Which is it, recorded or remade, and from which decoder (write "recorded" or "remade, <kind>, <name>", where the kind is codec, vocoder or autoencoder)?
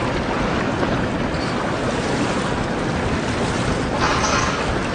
recorded